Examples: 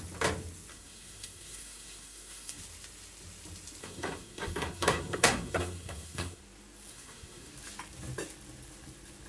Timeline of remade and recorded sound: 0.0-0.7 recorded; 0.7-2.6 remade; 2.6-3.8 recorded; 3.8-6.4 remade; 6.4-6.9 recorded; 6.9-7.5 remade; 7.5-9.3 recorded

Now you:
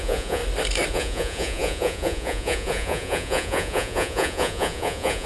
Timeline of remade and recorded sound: 0.0-0.4 remade; 0.4-0.9 recorded; 0.9-5.3 remade

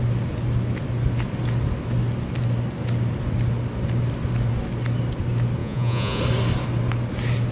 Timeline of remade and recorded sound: 0.0-5.6 recorded; 5.6-6.2 remade; 6.2-7.5 recorded

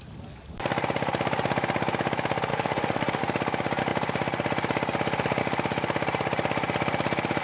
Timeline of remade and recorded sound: 0.0-2.5 recorded; 2.5-3.2 remade; 3.2-7.4 recorded

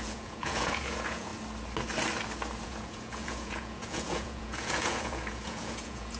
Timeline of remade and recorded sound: 0.0-1.3 remade; 1.3-2.6 recorded; 2.6-6.2 remade

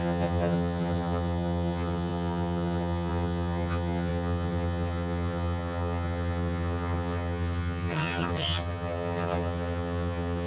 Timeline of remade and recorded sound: 0.0-10.5 remade

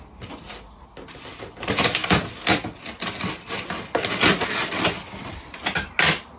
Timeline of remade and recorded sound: 0.0-6.4 recorded